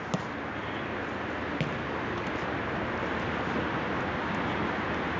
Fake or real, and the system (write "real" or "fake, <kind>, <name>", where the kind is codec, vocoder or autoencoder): real